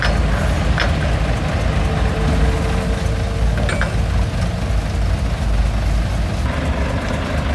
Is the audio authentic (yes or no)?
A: yes